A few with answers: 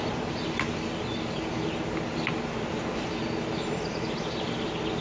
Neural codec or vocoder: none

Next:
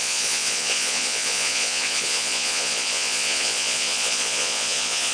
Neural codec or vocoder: vocoder, Vocos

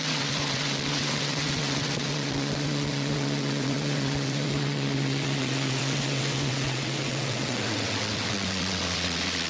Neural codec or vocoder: vocoder, WaveNeXt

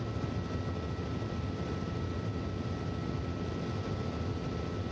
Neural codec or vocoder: none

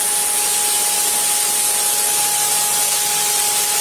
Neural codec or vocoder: none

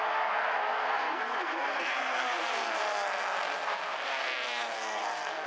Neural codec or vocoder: codec, SNAC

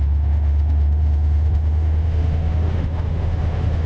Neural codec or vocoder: autoencoder, DAC-VAE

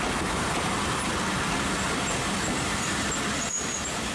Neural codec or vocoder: none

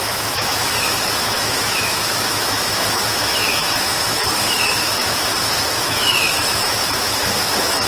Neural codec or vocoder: autoencoder, DAC-VAE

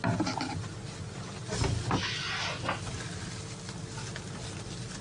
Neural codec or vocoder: none